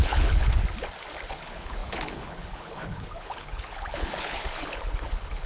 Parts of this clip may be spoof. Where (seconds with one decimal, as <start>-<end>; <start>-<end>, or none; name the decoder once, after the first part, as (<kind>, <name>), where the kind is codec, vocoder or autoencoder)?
0.0-0.6 (codec, HILCodec); 1.3-5.5